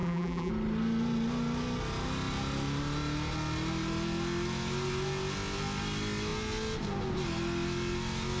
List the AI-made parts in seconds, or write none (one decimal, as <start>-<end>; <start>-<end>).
0.0-0.5